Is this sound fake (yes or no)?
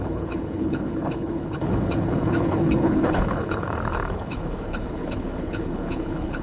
yes